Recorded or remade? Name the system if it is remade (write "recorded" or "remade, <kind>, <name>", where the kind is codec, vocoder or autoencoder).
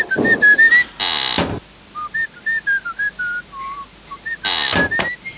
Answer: recorded